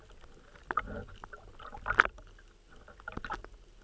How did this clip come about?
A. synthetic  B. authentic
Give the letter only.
B